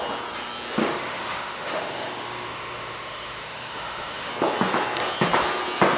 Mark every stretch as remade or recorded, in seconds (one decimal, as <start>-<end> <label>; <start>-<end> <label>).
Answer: 0.0-0.8 recorded; 0.8-4.3 remade; 4.3-6.0 recorded